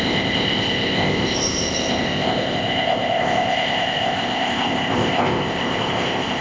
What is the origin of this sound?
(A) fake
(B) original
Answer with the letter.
A